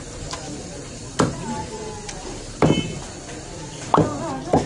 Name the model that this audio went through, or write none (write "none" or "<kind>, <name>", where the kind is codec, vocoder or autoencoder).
none